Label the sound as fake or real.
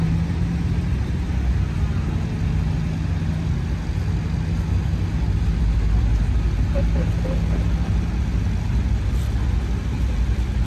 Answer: real